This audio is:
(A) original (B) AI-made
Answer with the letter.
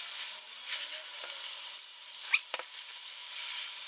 A